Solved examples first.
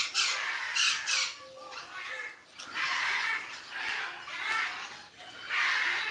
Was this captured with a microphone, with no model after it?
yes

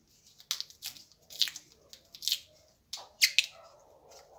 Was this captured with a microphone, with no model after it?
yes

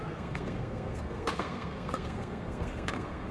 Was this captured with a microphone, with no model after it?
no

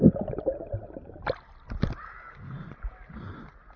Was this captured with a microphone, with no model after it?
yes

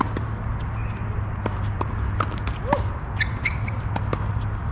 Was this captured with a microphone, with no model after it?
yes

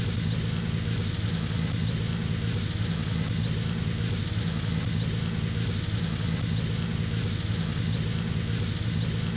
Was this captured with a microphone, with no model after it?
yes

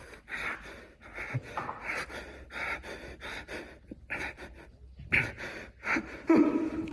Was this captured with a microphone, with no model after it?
no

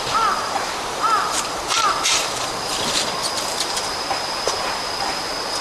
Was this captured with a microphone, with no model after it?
yes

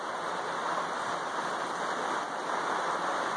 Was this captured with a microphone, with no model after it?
yes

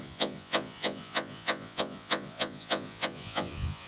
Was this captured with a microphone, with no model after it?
no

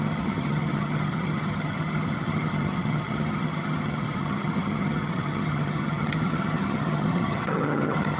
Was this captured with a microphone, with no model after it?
no